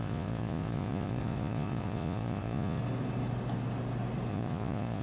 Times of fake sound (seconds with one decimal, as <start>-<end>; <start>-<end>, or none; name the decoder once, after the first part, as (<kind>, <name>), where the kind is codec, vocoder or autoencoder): 0.0-2.8 (vocoder, Vocos); 4.3-5.0